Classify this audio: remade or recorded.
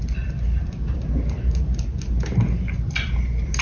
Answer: recorded